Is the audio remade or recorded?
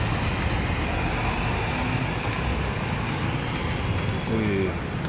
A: recorded